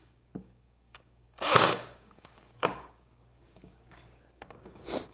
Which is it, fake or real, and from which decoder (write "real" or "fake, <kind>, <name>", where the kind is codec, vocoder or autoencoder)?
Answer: fake, codec, DAC